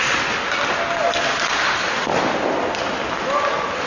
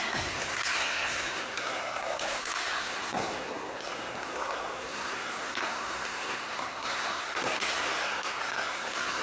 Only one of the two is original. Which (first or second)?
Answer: first